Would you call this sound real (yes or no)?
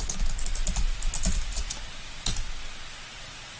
yes